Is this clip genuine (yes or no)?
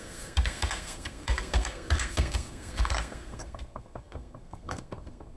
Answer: no